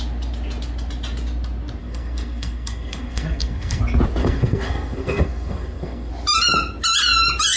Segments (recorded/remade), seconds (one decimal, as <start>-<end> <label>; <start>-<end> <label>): 0.0-1.8 recorded; 1.8-3.8 remade; 3.8-4.2 recorded; 4.2-6.1 remade; 6.1-7.6 recorded